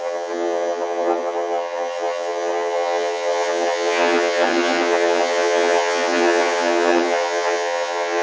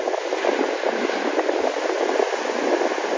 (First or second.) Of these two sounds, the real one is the second